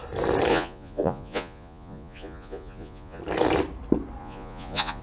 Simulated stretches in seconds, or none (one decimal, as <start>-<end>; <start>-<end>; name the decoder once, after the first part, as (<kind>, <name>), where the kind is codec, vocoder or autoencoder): 0.5-3.2 (vocoder, Vocos); 4.2-5.0